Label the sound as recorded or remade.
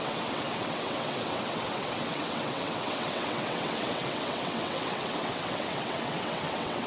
remade